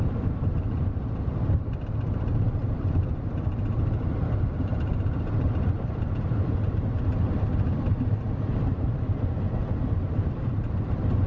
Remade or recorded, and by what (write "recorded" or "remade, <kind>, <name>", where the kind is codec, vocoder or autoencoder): remade, vocoder, BigVGAN v2